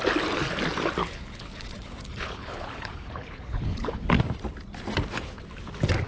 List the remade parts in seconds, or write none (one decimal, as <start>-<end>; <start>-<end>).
1.0-4.2